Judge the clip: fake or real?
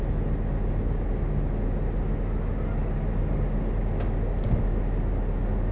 real